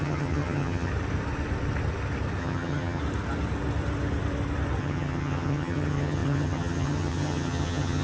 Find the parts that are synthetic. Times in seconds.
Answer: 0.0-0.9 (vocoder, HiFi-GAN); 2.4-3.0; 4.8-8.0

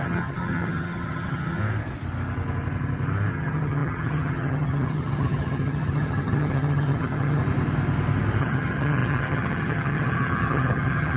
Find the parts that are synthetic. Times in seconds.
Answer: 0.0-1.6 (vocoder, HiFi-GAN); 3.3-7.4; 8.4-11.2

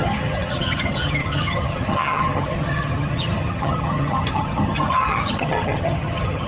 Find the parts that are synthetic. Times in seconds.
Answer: 0.0-6.5 (vocoder, HiFi-GAN)